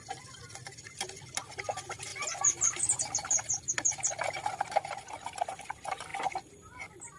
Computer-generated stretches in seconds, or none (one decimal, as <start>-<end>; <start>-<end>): 2.1-3.7